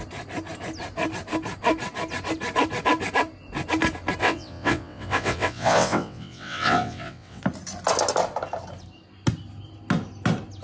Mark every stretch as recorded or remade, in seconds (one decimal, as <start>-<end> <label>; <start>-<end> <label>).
0.0-4.2 recorded; 4.2-7.4 remade; 7.4-10.6 recorded